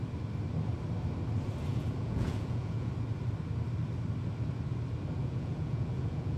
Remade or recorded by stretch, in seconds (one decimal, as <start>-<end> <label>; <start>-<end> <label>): 0.0-1.7 recorded; 1.7-2.9 remade; 2.9-5.2 recorded; 5.2-6.4 remade